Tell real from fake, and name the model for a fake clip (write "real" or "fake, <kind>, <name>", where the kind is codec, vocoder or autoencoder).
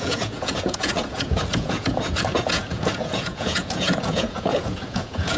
fake, vocoder, Vocos